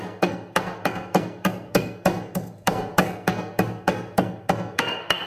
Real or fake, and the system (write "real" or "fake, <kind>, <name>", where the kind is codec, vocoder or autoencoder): fake, codec, SNAC